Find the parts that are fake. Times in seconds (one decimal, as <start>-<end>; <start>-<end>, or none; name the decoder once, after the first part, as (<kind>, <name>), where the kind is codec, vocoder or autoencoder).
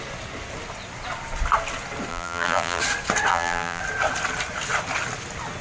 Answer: 2.1-2.8 (vocoder, BigVGAN v2); 3.3-3.8